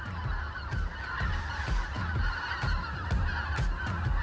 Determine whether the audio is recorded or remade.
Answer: recorded